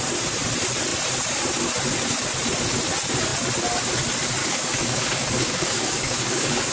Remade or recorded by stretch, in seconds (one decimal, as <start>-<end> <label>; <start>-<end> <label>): 0.0-4.4 recorded; 4.4-6.7 remade